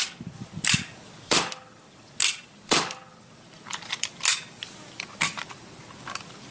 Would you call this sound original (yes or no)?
no